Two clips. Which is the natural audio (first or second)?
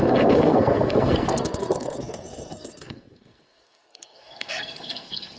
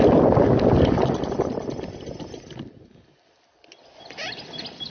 second